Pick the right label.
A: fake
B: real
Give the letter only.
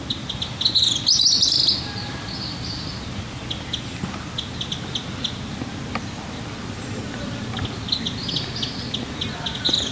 B